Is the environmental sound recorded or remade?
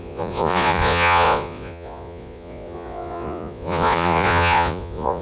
remade